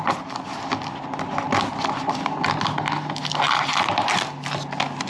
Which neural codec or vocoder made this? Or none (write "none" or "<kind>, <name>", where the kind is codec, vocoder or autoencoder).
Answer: none